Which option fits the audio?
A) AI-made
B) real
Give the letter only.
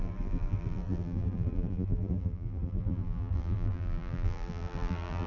A